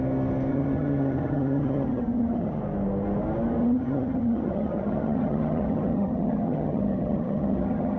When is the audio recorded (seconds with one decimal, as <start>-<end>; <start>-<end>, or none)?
0.0-0.5; 2.6-3.6